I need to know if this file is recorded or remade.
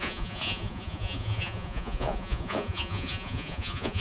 remade